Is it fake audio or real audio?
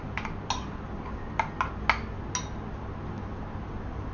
real